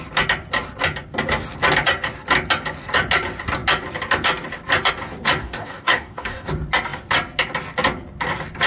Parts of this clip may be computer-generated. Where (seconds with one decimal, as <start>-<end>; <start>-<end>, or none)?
5.4-6.5